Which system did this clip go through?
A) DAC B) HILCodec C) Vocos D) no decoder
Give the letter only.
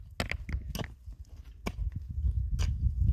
D